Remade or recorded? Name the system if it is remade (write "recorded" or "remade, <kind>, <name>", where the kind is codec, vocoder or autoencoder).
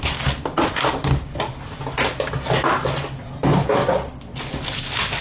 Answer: recorded